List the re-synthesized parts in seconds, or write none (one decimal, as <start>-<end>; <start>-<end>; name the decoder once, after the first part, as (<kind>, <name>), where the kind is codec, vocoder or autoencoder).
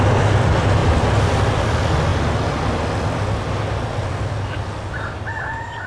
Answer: none